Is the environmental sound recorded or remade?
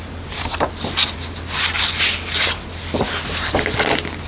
recorded